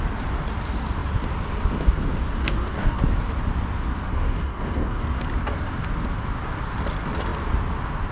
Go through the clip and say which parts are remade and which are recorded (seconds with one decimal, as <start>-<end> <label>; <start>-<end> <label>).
0.0-2.4 recorded; 2.4-3.0 remade; 3.0-4.1 recorded; 4.1-5.2 remade; 5.2-8.1 recorded